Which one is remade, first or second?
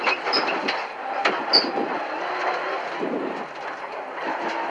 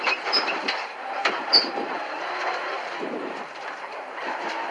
second